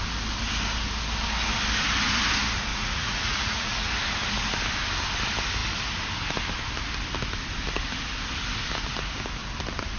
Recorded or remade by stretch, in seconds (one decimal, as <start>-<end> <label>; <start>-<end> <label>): 0.0-2.7 recorded; 2.7-3.9 remade; 3.9-10.0 recorded